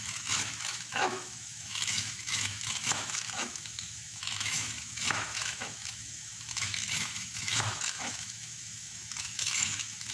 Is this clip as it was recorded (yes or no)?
no